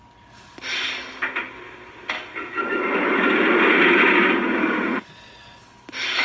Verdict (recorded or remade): recorded